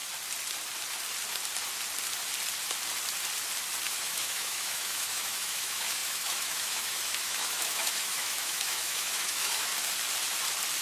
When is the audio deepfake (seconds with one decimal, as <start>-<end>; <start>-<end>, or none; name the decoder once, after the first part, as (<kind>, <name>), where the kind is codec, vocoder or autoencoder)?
3.9-9.7 (autoencoder, DAC-VAE)